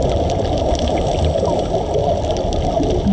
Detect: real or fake real